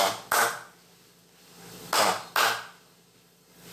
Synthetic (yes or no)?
no